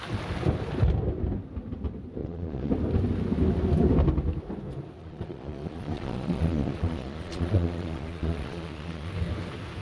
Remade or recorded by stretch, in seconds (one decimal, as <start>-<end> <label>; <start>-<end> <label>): 0.0-2.2 recorded; 2.2-2.7 remade; 2.7-5.0 recorded; 5.0-9.1 remade; 9.1-9.8 recorded